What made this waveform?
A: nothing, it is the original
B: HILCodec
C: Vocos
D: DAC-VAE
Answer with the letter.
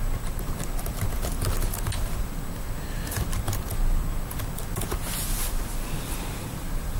A